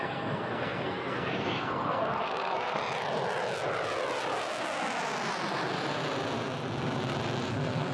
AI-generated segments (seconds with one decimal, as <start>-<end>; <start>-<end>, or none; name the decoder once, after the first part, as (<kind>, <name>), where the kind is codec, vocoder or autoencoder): 0.0-2.8 (codec, SNAC); 7.5-7.9